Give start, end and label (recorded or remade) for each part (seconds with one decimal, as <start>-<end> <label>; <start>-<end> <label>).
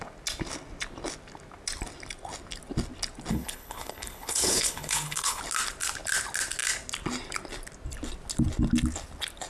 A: 0.0-3.3 recorded; 3.3-5.4 remade; 5.4-9.5 recorded